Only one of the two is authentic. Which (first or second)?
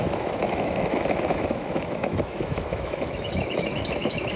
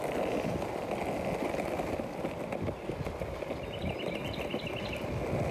second